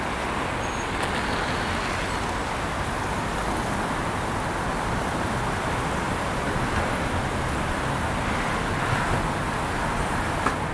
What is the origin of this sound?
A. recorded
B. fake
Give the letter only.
A